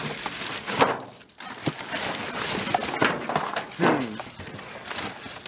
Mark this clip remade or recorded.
remade